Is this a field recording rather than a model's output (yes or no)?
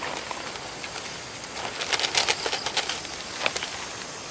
yes